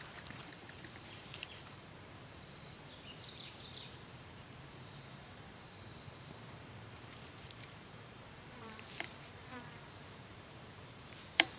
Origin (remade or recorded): remade